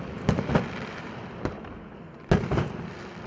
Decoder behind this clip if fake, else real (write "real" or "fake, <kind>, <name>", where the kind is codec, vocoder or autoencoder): real